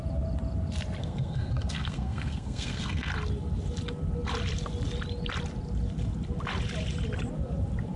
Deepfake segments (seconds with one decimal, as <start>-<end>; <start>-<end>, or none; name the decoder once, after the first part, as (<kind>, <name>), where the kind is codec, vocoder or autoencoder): 1.0-3.1 (codec, SNAC)